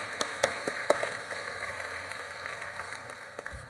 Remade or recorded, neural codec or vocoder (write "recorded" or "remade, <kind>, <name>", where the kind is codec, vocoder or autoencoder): remade, codec, SNAC